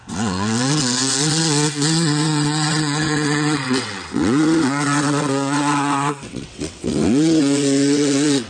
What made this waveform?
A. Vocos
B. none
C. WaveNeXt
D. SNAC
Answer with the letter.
C